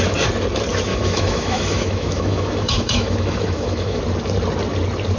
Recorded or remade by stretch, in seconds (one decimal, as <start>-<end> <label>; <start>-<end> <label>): 0.0-0.9 recorded; 0.9-4.0 remade; 4.0-5.2 recorded